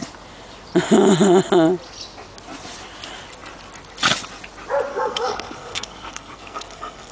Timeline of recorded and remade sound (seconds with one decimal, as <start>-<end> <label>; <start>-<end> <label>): 0.0-4.9 recorded; 4.9-7.1 remade

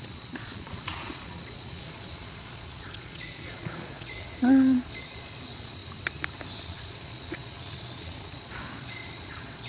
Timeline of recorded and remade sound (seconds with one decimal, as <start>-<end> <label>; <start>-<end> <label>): 0.0-5.8 remade; 5.8-6.6 recorded; 6.6-9.7 remade

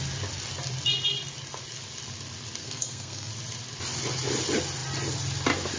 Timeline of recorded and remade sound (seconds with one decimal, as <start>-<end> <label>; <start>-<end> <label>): 0.0-2.6 recorded; 2.6-3.3 remade; 3.3-5.8 recorded